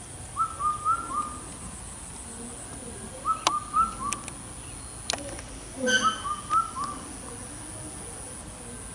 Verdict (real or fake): real